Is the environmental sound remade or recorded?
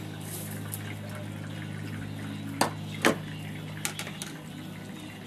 recorded